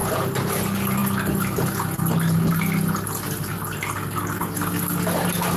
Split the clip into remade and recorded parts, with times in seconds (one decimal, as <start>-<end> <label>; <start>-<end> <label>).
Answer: 0.0-5.6 recorded